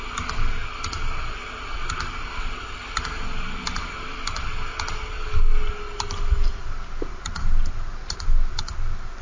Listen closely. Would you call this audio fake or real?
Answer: real